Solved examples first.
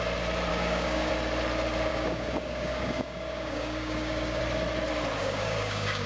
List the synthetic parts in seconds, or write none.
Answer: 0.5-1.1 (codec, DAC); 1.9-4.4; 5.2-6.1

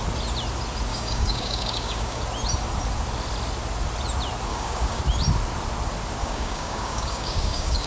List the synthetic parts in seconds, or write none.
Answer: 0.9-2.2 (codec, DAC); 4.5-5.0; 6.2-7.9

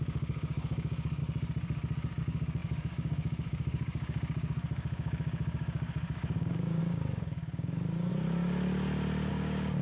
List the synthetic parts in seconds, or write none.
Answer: 0.0-1.2 (codec, DAC); 2.2-8.1; 9.3-9.8